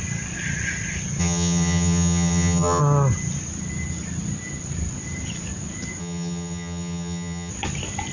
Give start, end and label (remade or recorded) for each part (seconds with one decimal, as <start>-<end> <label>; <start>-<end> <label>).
0.0-1.2 recorded; 1.2-2.8 remade; 2.8-6.0 recorded; 6.0-7.5 remade; 7.5-8.1 recorded